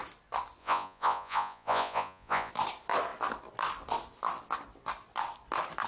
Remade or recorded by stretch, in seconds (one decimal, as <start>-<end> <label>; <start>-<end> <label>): 0.0-0.6 recorded; 0.6-2.5 remade; 2.5-5.9 recorded